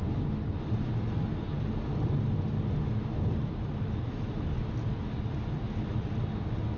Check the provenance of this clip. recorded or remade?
recorded